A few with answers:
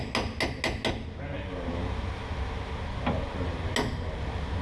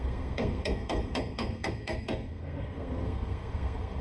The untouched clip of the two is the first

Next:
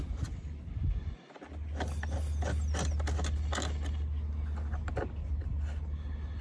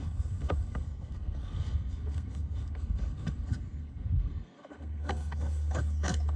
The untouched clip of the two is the first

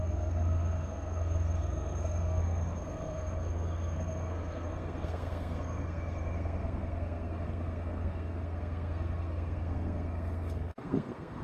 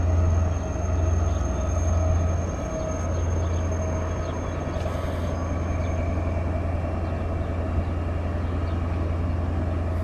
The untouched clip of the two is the second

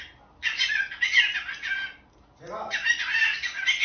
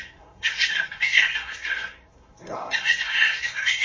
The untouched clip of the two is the first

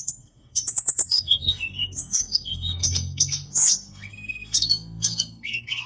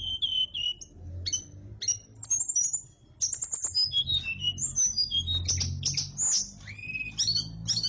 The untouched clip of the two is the second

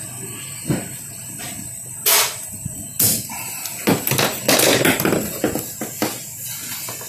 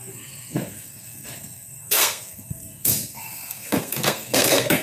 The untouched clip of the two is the first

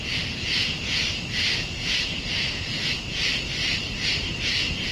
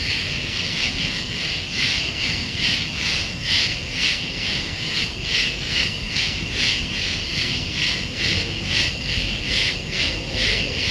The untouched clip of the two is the first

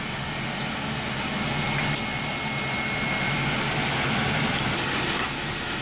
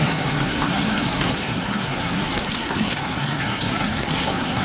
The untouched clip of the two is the first